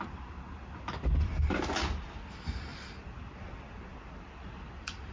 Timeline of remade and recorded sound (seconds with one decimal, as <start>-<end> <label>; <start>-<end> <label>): 0.0-5.1 recorded